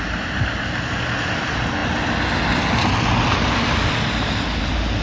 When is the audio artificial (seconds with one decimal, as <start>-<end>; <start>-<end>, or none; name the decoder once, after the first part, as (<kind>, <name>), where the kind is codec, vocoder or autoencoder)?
none